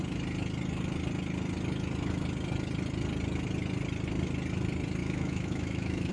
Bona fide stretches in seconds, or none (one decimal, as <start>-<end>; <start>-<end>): 0.0-5.0